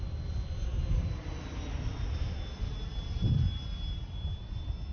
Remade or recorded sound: recorded